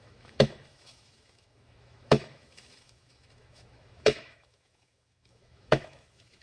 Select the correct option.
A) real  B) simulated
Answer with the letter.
B